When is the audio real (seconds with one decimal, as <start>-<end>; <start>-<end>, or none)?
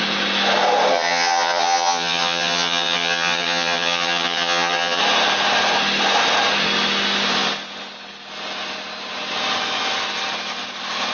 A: 0.0-0.9; 5.0-11.1